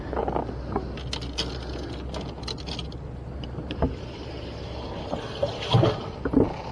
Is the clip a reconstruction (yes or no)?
no